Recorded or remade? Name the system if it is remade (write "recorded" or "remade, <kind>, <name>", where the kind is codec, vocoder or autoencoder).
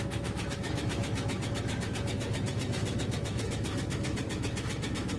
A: remade, autoencoder, DAC-VAE